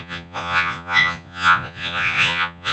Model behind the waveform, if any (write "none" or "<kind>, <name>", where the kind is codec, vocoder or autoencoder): vocoder, Vocos